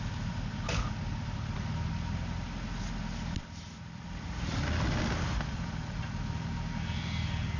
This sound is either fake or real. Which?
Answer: real